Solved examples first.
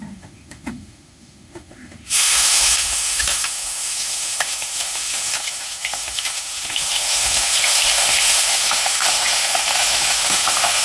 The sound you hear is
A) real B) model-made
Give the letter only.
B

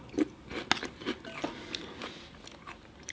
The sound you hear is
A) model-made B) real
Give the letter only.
B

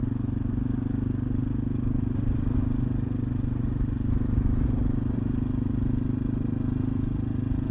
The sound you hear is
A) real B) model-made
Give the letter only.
A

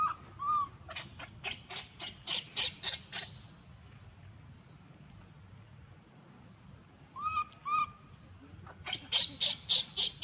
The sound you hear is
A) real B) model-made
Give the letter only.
A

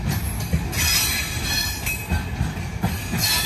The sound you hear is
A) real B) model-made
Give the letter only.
A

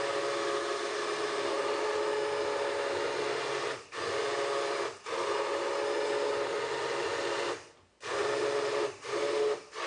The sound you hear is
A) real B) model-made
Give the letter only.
A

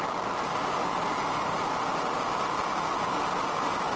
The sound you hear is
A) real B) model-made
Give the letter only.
A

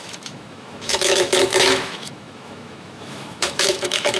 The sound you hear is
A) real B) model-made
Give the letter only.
B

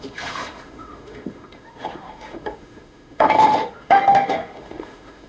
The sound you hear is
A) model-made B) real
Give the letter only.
A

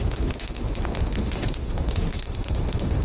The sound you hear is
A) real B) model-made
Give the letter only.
B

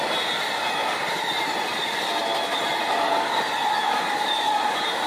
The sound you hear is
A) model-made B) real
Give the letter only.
B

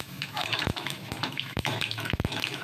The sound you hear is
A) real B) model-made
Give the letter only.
B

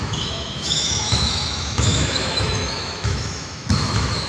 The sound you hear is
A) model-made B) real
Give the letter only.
A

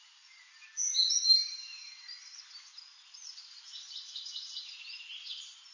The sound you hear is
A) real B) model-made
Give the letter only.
A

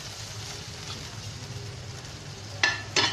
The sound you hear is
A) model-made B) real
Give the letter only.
B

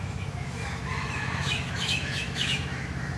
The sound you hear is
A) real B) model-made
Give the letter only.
B